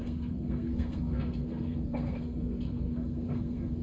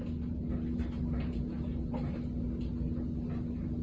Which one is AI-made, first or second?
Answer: first